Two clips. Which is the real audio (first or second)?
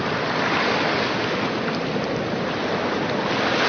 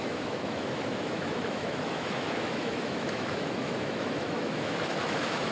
first